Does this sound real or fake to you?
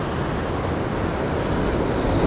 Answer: real